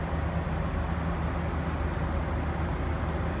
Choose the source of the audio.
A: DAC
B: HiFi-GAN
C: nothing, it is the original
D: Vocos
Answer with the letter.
C